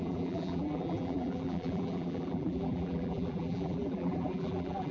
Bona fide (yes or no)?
no